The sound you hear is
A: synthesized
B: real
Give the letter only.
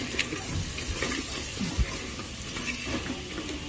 B